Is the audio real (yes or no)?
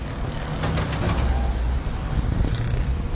yes